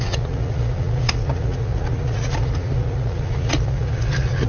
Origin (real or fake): fake